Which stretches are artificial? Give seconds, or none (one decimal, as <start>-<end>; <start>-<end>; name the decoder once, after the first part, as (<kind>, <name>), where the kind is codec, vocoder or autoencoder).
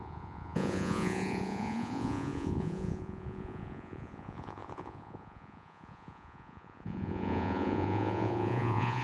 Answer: 0.0-9.0 (vocoder, Vocos)